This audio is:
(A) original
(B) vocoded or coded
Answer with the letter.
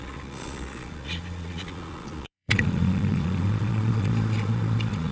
B